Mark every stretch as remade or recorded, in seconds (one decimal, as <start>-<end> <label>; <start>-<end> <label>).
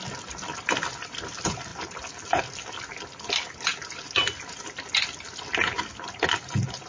0.0-6.9 recorded